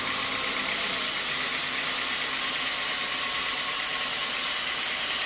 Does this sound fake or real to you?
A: real